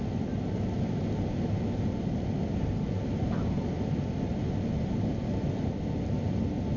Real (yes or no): yes